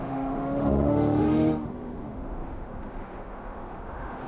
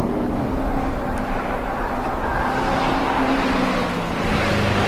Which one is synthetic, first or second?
first